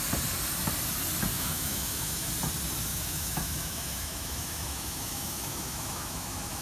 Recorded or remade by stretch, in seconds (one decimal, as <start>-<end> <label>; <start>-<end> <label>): 0.0-1.3 recorded; 1.3-2.3 remade; 2.3-2.9 recorded; 2.9-6.6 remade